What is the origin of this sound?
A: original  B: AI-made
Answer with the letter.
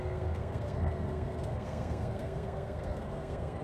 B